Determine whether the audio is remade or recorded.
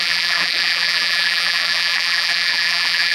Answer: remade